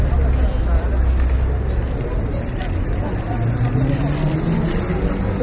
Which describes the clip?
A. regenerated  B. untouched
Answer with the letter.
B